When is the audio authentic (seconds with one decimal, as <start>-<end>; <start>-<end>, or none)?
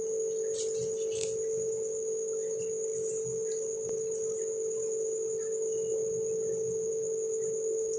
0.0-8.0